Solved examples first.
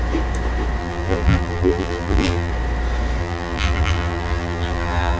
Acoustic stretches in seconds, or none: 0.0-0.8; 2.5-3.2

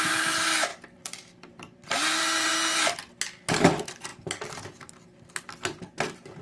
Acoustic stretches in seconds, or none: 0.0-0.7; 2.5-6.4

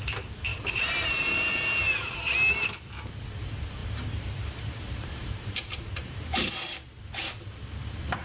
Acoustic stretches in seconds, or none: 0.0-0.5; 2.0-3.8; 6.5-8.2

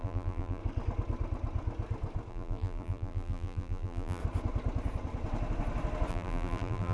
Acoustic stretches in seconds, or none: 0.6-2.3; 4.2-6.1

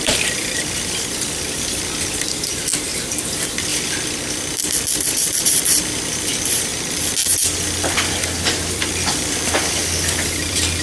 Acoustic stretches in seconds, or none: 3.7-5.4; 6.7-7.8

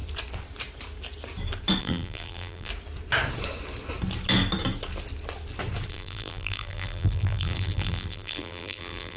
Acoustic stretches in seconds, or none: 0.0-1.8; 2.7-5.9

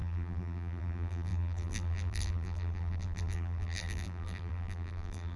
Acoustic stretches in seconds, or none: none